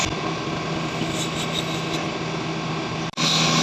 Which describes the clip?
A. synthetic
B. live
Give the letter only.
B